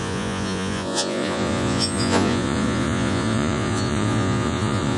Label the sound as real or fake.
fake